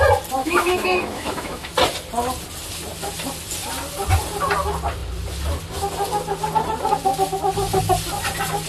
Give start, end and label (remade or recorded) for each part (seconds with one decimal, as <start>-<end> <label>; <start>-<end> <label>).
0.0-0.4 recorded; 0.4-1.7 remade; 1.7-8.7 recorded